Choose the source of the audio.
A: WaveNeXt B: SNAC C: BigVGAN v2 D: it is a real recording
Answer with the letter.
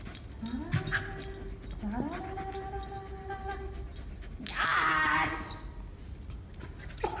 D